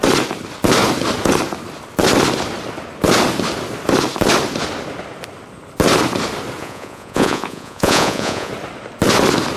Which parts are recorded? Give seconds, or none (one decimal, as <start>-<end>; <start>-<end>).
0.0-6.6; 8.5-9.6